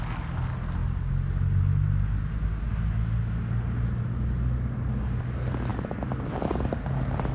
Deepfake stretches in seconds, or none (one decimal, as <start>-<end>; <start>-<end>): none

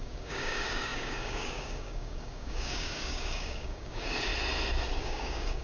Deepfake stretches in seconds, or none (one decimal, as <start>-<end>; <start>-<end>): 0.0-4.3; 5.0-5.6

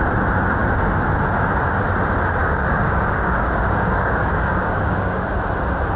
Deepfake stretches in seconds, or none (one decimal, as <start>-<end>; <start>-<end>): 2.4-5.3

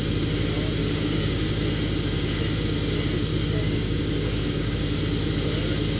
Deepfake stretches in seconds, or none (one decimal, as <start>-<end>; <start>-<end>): 0.8-1.5; 3.3-5.0